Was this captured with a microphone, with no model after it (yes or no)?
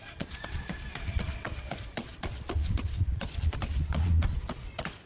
no